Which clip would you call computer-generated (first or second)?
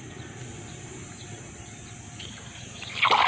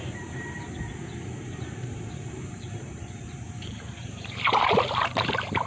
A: second